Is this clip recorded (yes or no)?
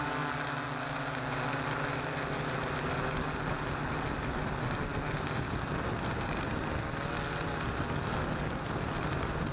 yes